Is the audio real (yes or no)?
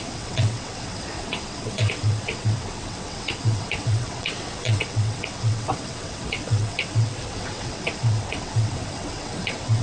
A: no